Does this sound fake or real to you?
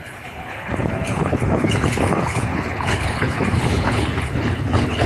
fake